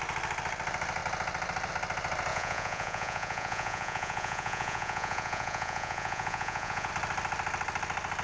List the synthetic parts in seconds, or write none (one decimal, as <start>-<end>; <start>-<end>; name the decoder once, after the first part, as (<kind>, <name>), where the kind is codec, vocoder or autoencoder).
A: 2.3-6.9 (vocoder, Vocos)